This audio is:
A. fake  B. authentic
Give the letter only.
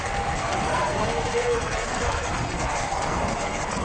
A